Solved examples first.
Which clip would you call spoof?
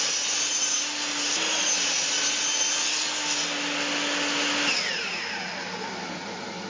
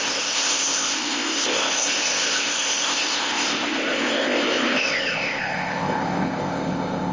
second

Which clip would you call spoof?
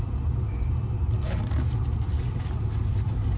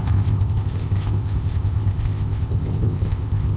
second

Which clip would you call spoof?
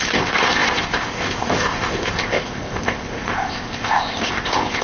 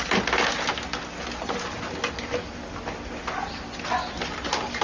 first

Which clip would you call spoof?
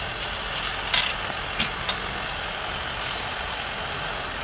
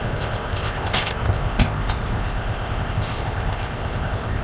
second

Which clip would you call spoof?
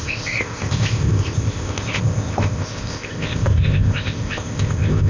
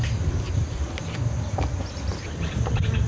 first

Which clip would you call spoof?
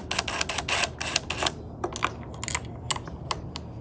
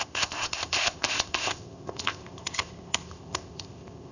second